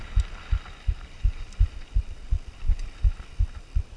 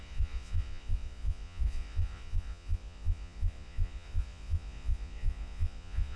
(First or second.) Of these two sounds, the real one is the first